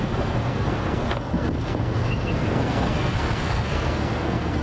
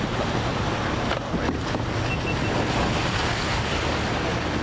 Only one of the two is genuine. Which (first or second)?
second